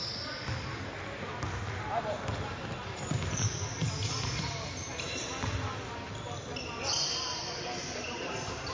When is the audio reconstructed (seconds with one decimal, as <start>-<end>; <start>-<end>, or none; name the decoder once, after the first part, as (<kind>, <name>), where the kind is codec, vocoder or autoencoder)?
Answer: 3.0-3.8 (vocoder, BigVGAN v2); 7.8-8.7